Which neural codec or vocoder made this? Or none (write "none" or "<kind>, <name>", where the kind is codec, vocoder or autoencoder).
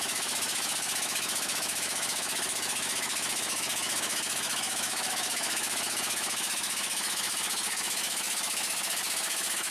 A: autoencoder, DAC-VAE